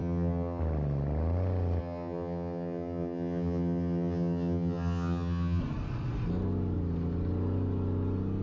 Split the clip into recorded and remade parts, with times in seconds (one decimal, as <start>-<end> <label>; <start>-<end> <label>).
0.0-0.6 remade; 0.6-1.8 recorded; 1.8-5.6 remade; 5.6-8.4 recorded